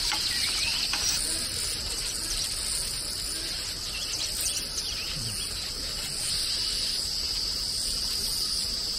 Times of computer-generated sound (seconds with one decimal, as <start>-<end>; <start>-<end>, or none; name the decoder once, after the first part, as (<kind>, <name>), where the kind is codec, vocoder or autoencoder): none

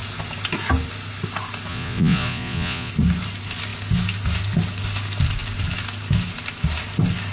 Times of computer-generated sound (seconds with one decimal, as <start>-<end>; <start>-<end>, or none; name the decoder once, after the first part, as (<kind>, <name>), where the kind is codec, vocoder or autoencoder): 1.7-2.9 (vocoder, Vocos)

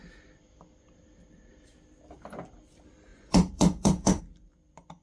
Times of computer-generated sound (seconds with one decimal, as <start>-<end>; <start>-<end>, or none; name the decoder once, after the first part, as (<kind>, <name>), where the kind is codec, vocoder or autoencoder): 3.1-4.2 (vocoder, Vocos)

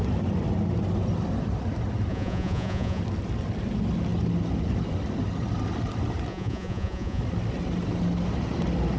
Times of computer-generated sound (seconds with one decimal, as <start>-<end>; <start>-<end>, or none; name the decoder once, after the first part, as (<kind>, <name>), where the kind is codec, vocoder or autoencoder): 2.1-3.0 (vocoder, Vocos); 6.3-7.2

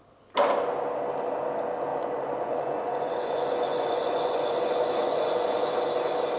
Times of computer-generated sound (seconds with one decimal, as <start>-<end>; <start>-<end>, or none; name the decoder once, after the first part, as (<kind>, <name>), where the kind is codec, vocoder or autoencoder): 1.9-5.7 (vocoder, Vocos)

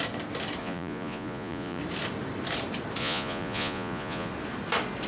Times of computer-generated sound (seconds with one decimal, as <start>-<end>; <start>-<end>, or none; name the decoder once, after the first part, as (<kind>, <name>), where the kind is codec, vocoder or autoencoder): 0.6-1.8 (vocoder, Vocos); 3.0-4.3